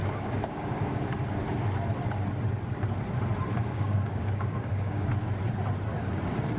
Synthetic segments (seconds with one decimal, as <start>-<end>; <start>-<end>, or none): 0.0-1.0; 3.6-5.1